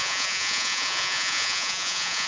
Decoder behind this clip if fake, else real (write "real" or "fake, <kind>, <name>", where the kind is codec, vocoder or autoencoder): fake, vocoder, Vocos